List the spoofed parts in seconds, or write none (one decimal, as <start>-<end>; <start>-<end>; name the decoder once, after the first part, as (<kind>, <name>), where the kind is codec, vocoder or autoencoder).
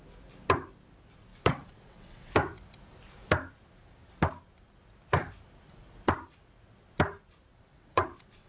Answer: 1.3-2.3 (vocoder, WaveNeXt); 7.5-8.5